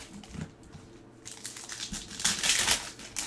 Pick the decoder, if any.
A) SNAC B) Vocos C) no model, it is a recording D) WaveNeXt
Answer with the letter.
C